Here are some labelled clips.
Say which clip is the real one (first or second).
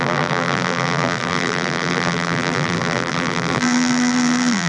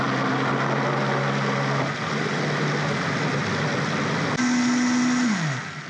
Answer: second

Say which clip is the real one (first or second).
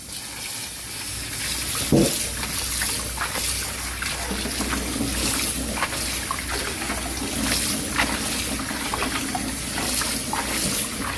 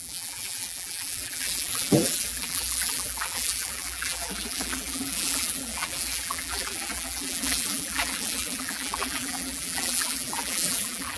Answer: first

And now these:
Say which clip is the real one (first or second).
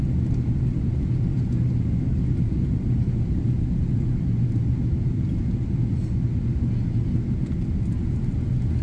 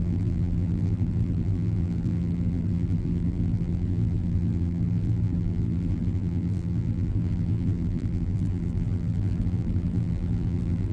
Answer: first